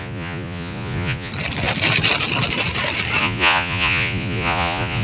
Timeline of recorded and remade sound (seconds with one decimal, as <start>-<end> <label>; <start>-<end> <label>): 0.0-1.3 remade; 1.3-3.2 recorded; 3.2-5.0 remade